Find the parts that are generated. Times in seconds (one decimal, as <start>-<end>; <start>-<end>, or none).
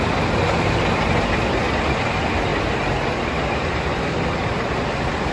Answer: none